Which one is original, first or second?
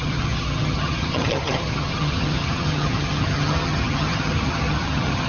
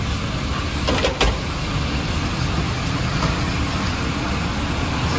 second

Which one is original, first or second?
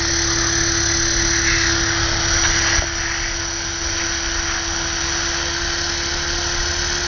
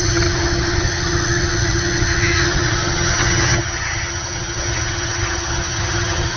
first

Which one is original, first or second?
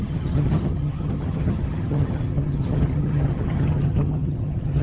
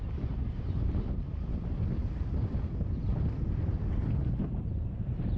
second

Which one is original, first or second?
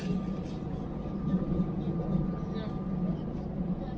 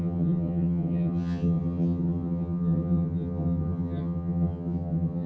first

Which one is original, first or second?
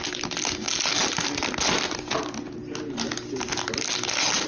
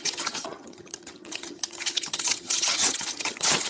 first